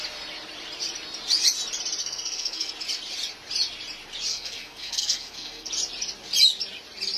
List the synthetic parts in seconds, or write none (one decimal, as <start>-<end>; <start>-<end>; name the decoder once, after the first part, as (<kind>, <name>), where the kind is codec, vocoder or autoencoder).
2.0-2.7 (codec, SNAC); 4.3-5.7